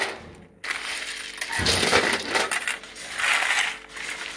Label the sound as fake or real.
real